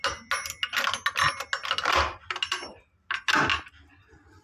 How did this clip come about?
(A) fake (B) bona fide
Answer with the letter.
B